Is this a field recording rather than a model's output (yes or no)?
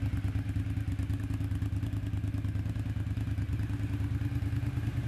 yes